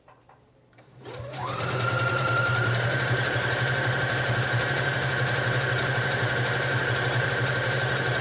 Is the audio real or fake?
fake